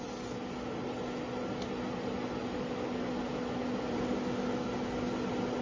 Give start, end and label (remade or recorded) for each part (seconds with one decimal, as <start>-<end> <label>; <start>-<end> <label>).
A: 0.0-5.6 recorded